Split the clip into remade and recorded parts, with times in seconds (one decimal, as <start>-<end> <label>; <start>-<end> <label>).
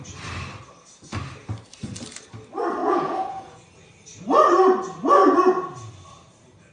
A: 0.0-2.8 recorded; 2.8-3.6 remade; 3.6-6.7 recorded